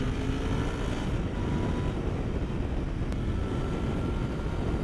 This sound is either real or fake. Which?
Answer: real